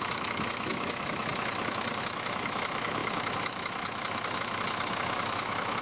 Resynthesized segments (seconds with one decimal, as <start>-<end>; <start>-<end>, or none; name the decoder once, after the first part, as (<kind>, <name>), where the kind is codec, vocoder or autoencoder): 0.0-5.8 (autoencoder, DAC-VAE)